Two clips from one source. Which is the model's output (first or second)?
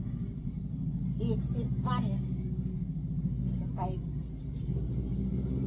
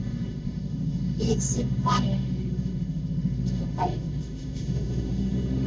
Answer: second